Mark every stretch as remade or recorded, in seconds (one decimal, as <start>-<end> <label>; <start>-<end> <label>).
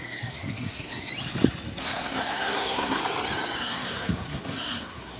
0.0-1.1 remade; 1.1-1.8 recorded; 1.8-3.0 remade; 3.0-3.6 recorded; 3.6-5.2 remade